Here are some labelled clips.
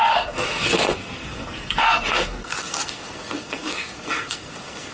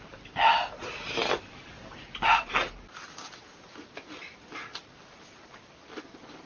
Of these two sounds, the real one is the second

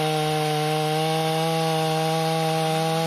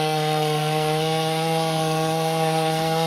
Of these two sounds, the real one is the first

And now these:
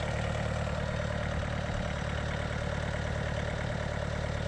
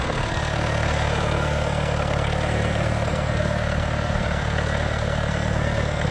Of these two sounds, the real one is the first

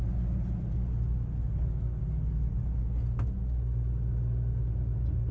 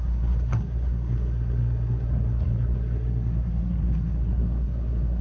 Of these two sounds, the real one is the first